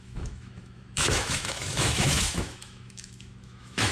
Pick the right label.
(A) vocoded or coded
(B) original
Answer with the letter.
A